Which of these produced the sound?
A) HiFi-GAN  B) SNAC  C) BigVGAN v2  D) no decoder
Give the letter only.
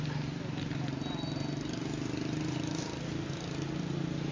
D